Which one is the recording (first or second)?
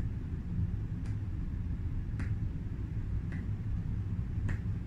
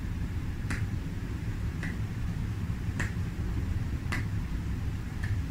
first